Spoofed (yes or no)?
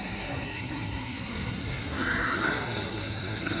yes